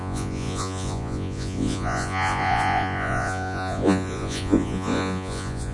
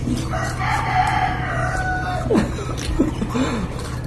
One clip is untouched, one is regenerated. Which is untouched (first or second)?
second